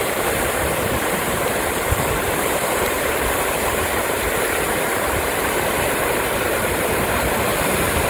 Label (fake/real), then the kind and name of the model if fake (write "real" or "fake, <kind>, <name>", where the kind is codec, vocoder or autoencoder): fake, vocoder, BigVGAN v2